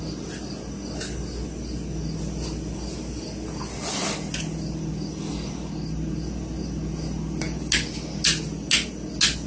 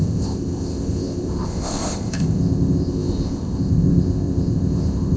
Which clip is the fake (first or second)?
second